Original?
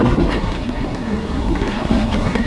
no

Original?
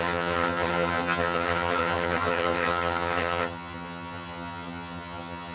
no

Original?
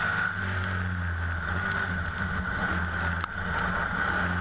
yes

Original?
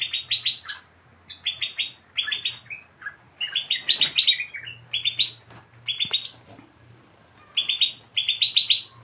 yes